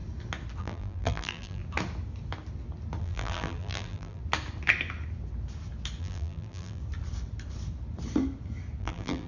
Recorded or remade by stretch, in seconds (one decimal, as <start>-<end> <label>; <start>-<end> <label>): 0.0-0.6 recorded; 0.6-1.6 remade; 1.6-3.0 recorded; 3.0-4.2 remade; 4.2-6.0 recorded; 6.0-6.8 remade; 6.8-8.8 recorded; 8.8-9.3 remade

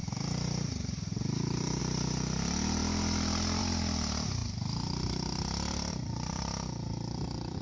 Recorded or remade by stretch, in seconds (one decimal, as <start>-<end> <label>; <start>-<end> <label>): 0.0-7.6 recorded

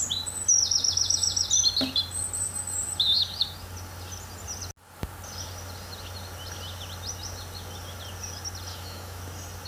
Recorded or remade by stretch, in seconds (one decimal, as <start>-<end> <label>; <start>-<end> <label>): 0.0-8.7 recorded; 8.7-9.2 remade; 9.2-9.7 recorded